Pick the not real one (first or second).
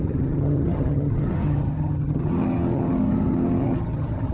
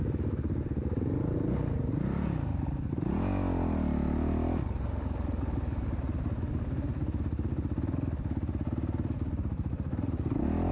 first